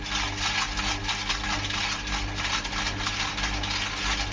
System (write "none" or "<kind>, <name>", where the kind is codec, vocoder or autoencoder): none